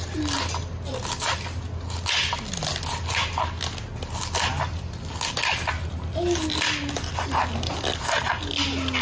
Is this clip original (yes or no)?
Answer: yes